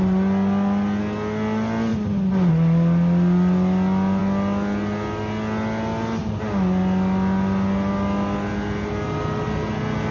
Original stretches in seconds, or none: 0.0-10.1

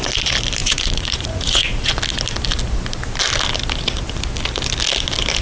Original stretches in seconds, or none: 0.0-0.6; 1.9-5.4

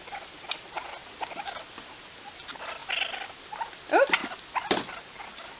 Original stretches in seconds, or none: 0.0-5.6

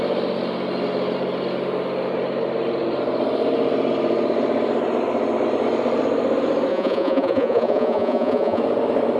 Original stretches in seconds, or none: 0.0-6.7; 8.6-9.2

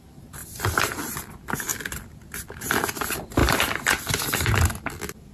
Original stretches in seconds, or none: 0.0-0.4; 1.0-5.3

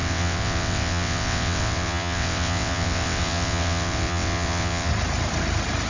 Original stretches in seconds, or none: 4.9-5.9

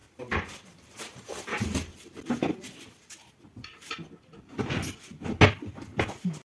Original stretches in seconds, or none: 3.3-6.5

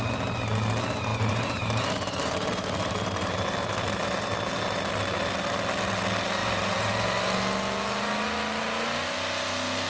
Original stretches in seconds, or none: 0.0-1.1; 3.3-6.4; 6.9-9.9